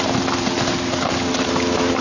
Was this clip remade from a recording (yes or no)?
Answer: no